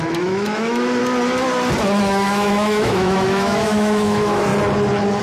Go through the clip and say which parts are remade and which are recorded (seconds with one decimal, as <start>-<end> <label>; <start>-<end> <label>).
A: 0.0-1.0 remade; 1.0-2.0 recorded; 2.0-4.5 remade; 4.5-5.2 recorded